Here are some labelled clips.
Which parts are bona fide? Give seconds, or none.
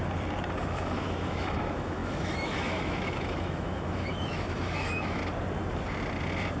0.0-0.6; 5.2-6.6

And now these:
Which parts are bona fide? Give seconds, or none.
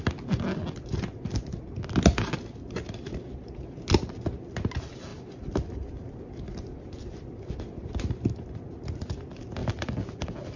0.0-5.1; 6.1-9.6